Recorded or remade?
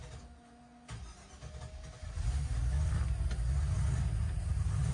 recorded